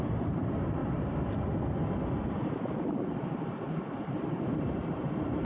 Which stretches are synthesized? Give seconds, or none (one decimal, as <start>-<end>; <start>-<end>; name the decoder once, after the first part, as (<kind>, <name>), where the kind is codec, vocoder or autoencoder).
0.0-0.8 (vocoder, BigVGAN v2); 4.0-5.4